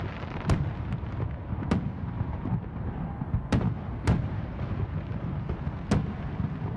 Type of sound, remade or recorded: recorded